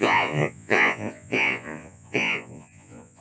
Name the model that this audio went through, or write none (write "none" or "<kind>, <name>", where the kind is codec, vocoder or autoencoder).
vocoder, Vocos